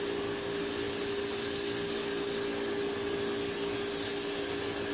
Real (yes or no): yes